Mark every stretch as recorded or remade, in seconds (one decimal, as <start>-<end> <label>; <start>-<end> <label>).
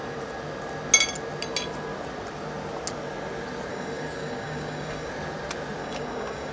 0.0-3.7 recorded; 3.7-5.1 remade; 5.1-5.8 recorded; 5.8-6.5 remade